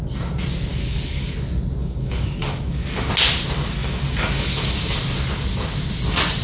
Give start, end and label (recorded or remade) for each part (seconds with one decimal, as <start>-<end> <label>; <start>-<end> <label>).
0.0-0.7 recorded; 0.7-1.3 remade; 1.3-1.8 recorded; 1.8-3.1 remade; 3.1-3.8 recorded; 3.8-4.7 remade; 4.7-6.4 recorded